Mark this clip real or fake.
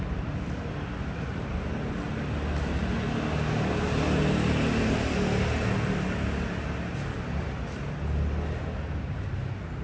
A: real